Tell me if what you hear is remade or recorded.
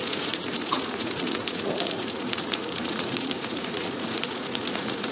remade